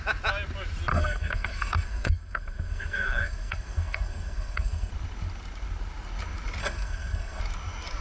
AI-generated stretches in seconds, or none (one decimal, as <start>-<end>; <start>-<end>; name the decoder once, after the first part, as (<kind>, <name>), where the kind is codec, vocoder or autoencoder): 0.9-4.9 (codec, SNAC); 6.6-7.4